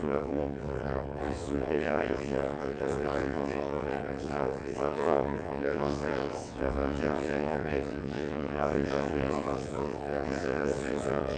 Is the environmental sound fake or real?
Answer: fake